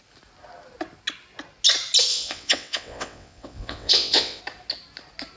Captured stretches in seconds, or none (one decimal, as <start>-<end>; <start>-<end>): 0.0-2.1; 4.4-5.4